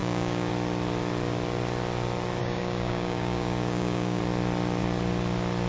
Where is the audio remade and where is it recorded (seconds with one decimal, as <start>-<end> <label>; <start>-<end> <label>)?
0.0-0.5 remade; 0.5-2.4 recorded; 2.4-4.2 remade; 4.2-5.7 recorded